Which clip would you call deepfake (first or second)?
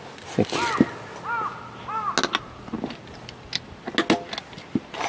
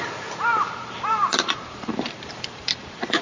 second